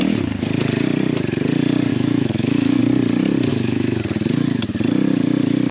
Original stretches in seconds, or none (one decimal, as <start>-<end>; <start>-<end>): 0.0-1.9; 2.8-3.5; 4.0-5.7